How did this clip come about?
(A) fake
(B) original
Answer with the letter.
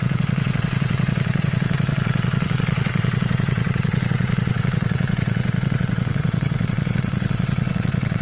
A